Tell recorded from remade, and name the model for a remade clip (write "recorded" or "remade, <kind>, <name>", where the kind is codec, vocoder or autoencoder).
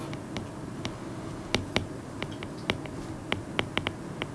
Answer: recorded